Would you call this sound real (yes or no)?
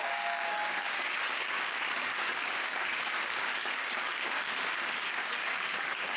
no